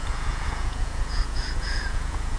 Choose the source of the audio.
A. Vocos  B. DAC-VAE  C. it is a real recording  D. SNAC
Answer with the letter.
A